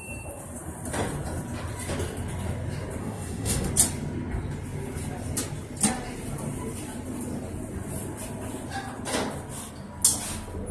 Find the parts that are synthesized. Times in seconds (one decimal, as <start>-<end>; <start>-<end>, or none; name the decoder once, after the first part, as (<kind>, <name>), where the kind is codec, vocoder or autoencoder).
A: 3.0-3.7 (codec, SNAC)